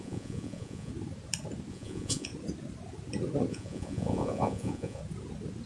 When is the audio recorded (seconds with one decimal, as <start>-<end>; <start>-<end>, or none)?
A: 0.9-1.7; 2.3-3.5; 5.0-5.7